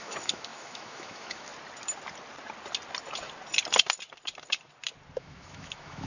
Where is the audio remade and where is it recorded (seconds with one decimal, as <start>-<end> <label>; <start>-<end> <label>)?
0.0-1.5 remade; 1.5-5.2 recorded; 5.2-6.1 remade